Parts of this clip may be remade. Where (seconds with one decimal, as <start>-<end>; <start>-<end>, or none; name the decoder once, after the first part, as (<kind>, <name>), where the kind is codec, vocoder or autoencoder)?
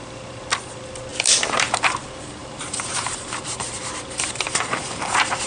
1.1-2.0 (vocoder, BigVGAN v2); 2.4-5.5